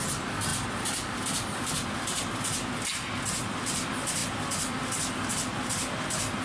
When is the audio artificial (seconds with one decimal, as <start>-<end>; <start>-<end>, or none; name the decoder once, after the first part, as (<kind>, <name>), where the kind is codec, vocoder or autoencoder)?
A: none

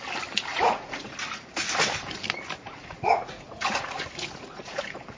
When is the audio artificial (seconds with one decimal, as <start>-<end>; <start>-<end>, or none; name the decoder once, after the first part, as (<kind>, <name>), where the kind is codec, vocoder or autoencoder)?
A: 0.5-1.1 (vocoder, Vocos); 2.8-5.2

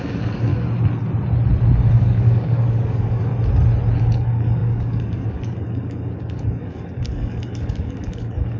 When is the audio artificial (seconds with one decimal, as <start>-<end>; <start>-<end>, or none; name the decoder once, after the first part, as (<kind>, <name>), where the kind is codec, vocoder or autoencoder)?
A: 0.0-0.5 (codec, DAC); 1.9-3.3; 4.0-8.6

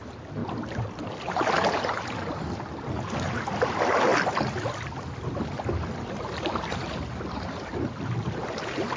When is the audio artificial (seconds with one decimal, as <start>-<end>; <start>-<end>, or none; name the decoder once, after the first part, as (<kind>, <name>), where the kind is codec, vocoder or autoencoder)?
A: none

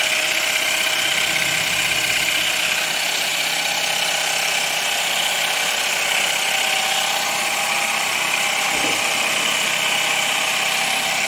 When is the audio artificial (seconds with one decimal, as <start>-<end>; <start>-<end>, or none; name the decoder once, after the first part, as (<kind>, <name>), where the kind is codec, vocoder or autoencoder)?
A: none

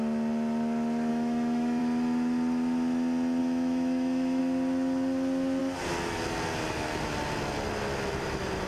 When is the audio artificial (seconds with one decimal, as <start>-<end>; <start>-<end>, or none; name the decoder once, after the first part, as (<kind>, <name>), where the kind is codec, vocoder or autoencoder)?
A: 1.1-1.8 (autoencoder, DAC-VAE); 3.4-4.4